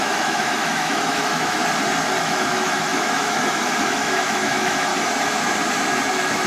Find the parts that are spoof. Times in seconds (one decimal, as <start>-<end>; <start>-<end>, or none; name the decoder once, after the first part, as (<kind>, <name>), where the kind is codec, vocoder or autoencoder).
0.0-1.6 (autoencoder, DAC-VAE); 2.2-4.9; 6.1-6.5